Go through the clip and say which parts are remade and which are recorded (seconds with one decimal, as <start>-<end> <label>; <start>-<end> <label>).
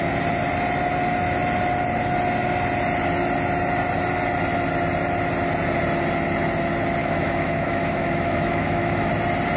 0.0-7.0 recorded; 7.0-9.1 remade; 9.1-9.6 recorded